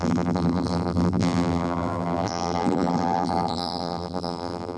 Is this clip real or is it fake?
fake